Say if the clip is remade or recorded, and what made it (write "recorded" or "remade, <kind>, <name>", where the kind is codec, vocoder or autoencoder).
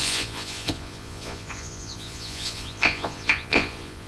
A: remade, vocoder, Vocos